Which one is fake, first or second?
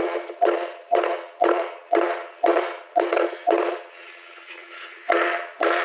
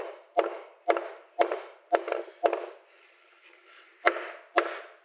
first